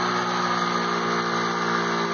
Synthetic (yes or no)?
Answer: no